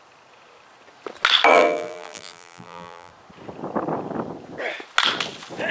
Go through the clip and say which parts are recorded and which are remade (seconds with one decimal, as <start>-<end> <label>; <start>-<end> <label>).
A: 0.0-1.5 recorded; 1.5-3.1 remade; 3.1-5.7 recorded